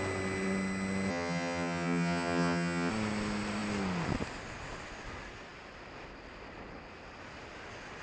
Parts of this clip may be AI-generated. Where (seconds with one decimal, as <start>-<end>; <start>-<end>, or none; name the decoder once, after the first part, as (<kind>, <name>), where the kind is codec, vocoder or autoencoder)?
1.1-2.9 (vocoder, HiFi-GAN)